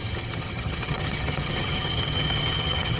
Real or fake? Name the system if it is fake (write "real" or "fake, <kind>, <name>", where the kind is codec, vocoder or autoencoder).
fake, vocoder, HiFi-GAN